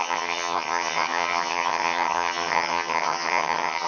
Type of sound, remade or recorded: remade